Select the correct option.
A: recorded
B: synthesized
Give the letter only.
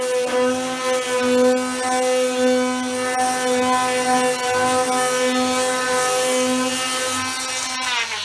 A